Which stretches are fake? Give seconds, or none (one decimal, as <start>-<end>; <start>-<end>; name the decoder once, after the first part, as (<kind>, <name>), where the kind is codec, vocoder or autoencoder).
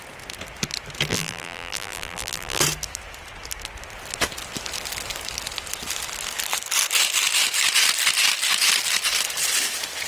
1.1-2.6 (vocoder, BigVGAN v2)